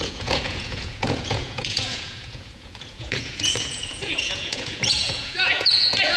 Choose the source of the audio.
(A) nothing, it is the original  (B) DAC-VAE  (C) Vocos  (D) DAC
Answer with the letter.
C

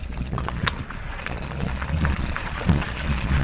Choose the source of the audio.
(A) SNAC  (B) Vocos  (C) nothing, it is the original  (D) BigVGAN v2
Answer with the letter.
B